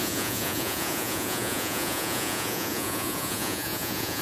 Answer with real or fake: fake